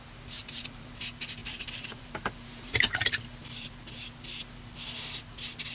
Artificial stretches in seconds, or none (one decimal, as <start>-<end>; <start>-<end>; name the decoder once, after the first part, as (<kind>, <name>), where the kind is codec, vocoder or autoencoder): 0.4-0.9 (vocoder, BigVGAN v2); 1.4-3.7